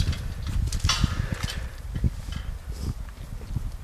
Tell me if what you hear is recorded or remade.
recorded